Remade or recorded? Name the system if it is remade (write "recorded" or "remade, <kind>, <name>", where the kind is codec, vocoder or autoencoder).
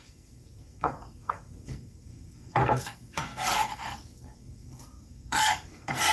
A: remade, codec, SNAC